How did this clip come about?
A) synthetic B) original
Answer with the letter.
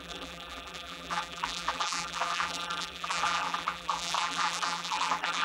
A